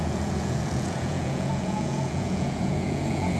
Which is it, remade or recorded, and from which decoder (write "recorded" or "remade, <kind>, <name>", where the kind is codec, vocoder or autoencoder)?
remade, vocoder, Vocos